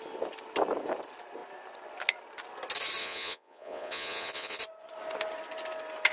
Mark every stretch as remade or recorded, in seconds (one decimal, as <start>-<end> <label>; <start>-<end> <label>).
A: 0.0-3.0 recorded; 3.0-4.6 remade; 4.6-6.1 recorded